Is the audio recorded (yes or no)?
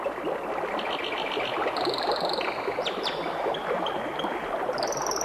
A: yes